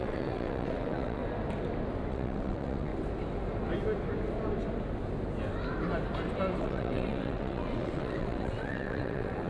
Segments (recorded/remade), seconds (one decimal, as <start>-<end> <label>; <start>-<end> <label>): 0.0-1.2 remade; 1.2-2.1 recorded; 2.1-2.9 remade; 2.9-6.6 recorded; 6.6-9.5 remade